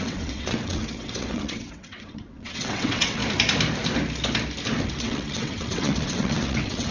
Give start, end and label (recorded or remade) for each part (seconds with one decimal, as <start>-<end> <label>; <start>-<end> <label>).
0.0-3.2 remade; 3.2-4.8 recorded; 4.8-6.9 remade